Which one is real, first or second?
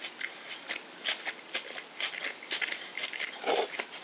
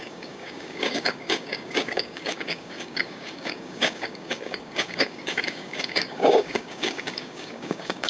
first